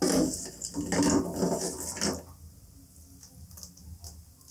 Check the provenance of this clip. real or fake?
real